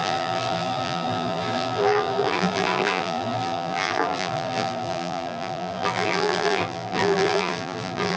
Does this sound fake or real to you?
fake